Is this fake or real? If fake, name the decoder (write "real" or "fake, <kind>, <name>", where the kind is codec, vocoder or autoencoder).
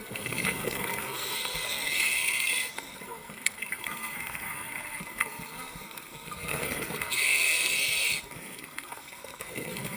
fake, codec, SNAC